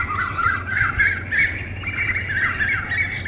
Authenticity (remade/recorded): recorded